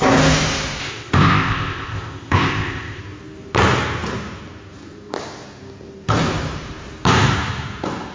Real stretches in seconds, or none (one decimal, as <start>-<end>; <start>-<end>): 0.0-0.8; 3.0-8.1